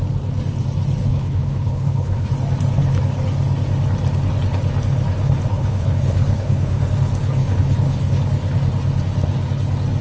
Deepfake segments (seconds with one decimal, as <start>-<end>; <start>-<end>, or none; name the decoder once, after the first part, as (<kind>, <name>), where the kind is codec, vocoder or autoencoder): 1.0-2.3 (codec, HILCodec); 5.5-6.8; 7.4-8.2